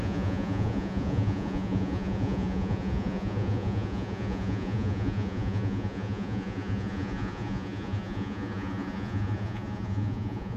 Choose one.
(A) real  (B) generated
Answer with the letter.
B